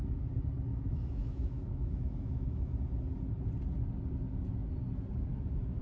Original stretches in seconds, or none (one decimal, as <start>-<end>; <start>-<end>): 0.0-0.7; 2.7-5.3